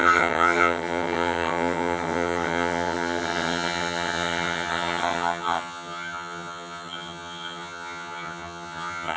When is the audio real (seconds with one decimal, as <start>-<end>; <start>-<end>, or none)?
none